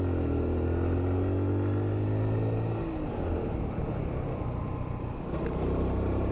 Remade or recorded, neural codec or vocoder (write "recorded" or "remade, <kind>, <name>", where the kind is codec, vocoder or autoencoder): recorded